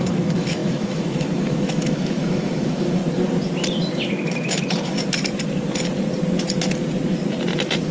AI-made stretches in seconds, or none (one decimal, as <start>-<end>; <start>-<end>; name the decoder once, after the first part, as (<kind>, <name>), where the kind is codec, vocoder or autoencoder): 0.0-3.0 (autoencoder, DAC-VAE)